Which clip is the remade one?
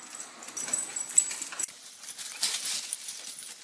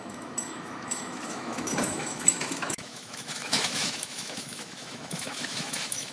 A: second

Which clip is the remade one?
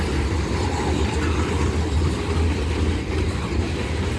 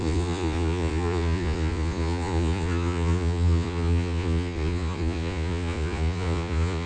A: second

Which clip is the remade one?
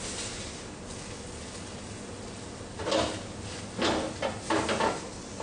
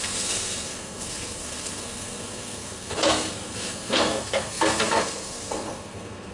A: second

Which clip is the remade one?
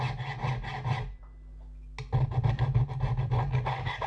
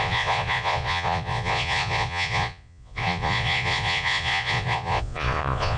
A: second